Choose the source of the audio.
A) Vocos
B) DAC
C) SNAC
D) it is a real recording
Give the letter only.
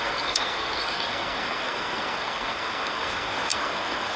C